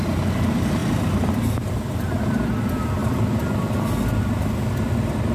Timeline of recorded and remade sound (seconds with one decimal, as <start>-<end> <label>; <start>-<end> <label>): 0.0-5.3 recorded